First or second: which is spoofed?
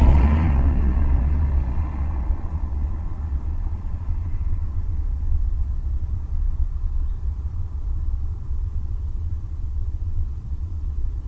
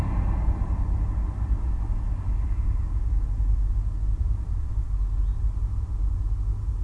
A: first